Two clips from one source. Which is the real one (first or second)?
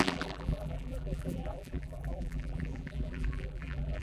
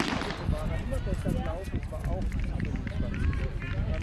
second